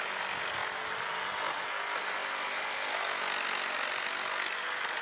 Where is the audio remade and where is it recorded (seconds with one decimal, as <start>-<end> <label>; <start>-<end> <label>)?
0.0-2.2 recorded; 2.2-2.9 remade; 2.9-5.0 recorded

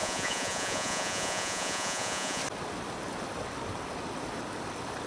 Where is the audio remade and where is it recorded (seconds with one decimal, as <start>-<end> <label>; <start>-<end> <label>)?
0.0-2.4 remade; 2.4-5.1 recorded

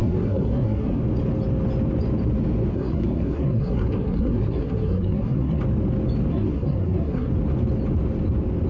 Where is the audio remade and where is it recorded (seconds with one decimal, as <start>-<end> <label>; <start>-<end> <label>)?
0.0-1.0 remade; 1.0-2.7 recorded; 2.7-5.6 remade; 5.6-6.3 recorded; 6.3-7.3 remade; 7.3-8.7 recorded